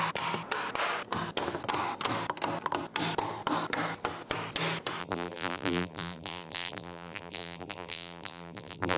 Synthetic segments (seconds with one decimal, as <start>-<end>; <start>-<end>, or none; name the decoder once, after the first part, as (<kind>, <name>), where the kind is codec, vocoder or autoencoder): 5.0-9.0 (vocoder, BigVGAN v2)